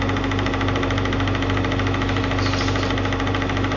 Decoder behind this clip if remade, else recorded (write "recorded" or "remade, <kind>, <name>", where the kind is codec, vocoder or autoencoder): recorded